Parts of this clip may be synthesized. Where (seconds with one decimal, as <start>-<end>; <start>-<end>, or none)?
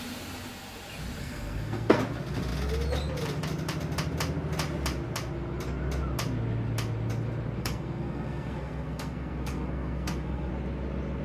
1.2-2.0; 7.6-10.5